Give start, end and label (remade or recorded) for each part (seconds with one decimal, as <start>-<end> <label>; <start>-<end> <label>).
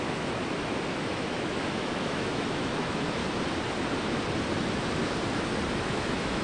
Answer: 0.0-0.4 remade; 0.4-0.9 recorded; 0.9-3.2 remade; 3.2-5.8 recorded; 5.8-6.4 remade